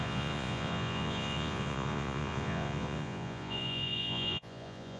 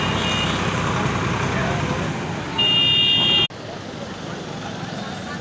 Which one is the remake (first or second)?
first